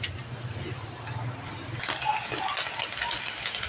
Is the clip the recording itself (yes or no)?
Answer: yes